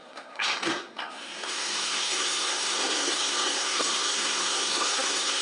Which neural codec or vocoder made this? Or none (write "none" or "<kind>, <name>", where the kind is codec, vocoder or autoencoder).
codec, SNAC